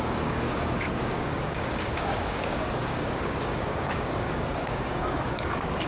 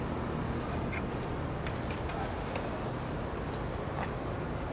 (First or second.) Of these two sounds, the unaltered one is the second